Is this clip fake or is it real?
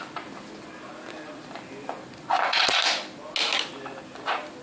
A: real